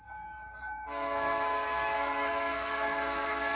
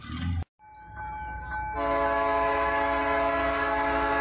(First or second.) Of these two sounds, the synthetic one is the first